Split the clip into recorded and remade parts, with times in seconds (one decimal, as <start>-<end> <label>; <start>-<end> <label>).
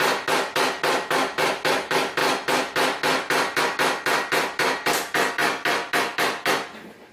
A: 0.0-7.1 recorded